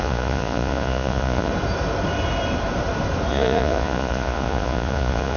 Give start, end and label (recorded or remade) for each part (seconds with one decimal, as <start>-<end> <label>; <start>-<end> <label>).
0.0-1.5 remade; 1.5-3.3 recorded; 3.3-5.4 remade